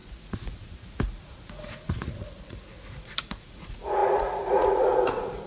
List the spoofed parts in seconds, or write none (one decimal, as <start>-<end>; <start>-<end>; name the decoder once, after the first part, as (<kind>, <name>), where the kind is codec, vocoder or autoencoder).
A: 0.0-5.5 (vocoder, Vocos)